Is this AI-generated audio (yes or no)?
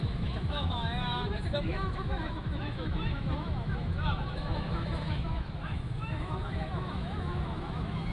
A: yes